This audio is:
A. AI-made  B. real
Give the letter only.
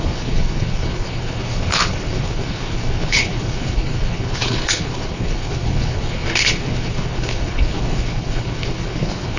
A